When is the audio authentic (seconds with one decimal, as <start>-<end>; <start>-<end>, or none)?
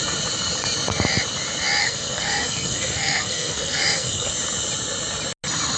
0.0-1.8; 4.3-5.8